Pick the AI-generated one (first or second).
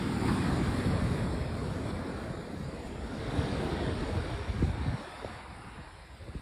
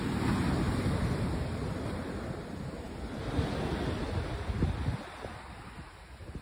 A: first